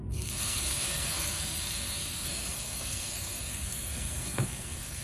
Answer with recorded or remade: remade